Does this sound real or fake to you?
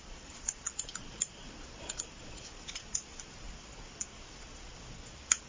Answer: fake